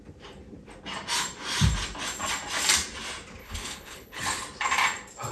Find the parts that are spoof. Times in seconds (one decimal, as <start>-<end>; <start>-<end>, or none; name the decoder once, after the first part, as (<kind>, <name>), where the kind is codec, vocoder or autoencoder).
3.4-4.2 (codec, HILCodec)